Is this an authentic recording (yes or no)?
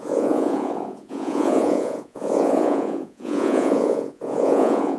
no